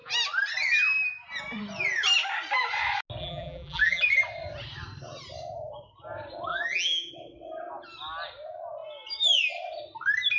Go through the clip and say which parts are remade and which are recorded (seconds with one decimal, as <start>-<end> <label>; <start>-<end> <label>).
0.0-3.2 recorded; 3.2-4.0 remade; 4.0-6.5 recorded; 6.5-7.1 remade; 7.1-10.4 recorded